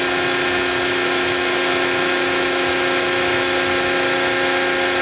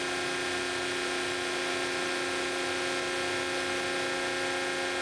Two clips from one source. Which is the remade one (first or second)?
first